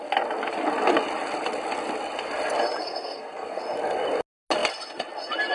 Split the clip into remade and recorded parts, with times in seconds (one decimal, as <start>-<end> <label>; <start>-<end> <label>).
0.0-2.8 recorded; 2.8-3.6 remade; 3.6-5.5 recorded